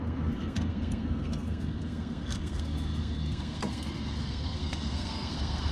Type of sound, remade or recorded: remade